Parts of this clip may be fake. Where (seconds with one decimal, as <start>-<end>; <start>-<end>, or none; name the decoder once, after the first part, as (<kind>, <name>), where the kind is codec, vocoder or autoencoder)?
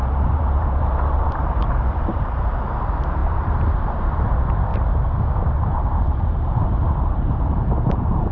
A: 0.0-4.7 (vocoder, BigVGAN v2); 6.0-8.3